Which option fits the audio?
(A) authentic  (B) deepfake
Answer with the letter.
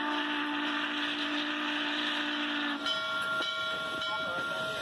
A